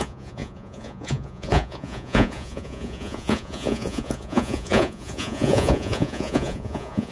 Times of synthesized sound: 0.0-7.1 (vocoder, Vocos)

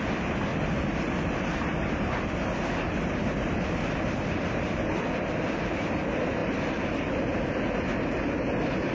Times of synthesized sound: 0.5-1.9 (vocoder, BigVGAN v2); 6.4-7.5

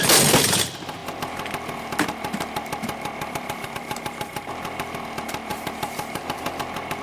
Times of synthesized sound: 5.5-6.6 (vocoder, BigVGAN v2)

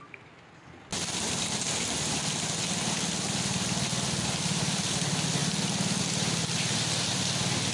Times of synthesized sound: none